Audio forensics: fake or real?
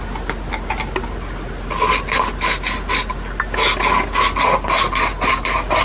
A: real